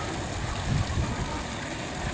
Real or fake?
real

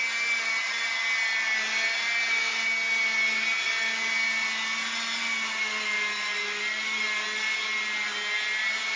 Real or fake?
real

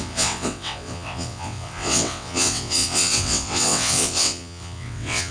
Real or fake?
fake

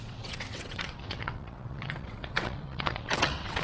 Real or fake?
fake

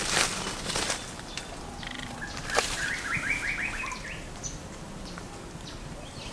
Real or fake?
real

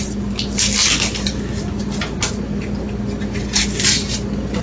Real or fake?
real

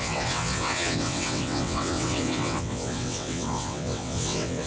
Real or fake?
fake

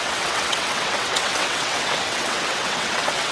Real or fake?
fake